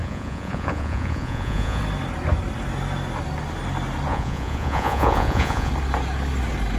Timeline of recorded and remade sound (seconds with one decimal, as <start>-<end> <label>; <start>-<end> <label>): 0.0-1.8 remade; 1.8-4.1 recorded; 4.1-5.7 remade; 5.7-6.8 recorded